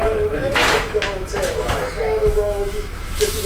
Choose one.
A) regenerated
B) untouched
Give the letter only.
A